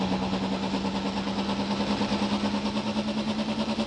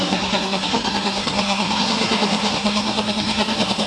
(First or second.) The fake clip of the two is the second